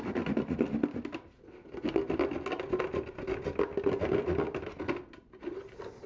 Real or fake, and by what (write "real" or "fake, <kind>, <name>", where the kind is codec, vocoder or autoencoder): real